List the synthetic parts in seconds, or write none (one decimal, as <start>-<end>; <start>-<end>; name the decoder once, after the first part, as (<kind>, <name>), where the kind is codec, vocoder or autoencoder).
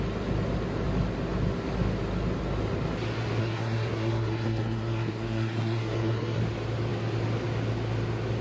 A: 3.4-6.4 (codec, SNAC)